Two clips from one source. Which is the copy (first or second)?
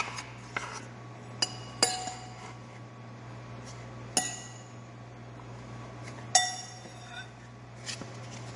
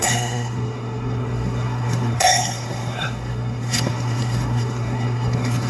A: second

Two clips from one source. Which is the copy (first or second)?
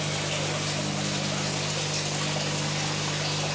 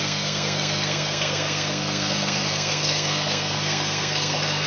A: second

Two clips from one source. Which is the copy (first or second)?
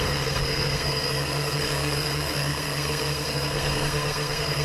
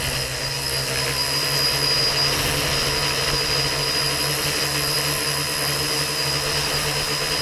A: first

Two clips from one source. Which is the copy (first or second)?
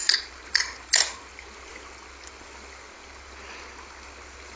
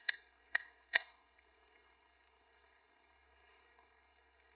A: second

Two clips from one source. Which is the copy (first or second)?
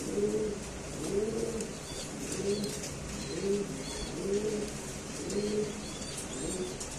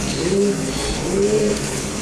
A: second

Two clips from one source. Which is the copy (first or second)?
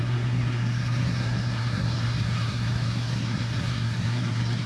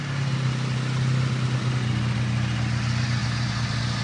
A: first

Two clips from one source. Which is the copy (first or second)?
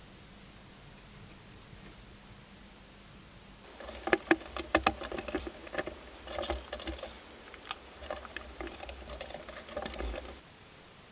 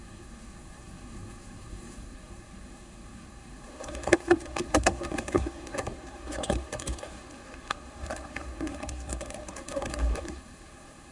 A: second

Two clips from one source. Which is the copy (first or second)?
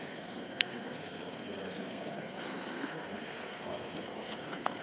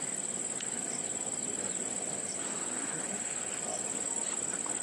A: first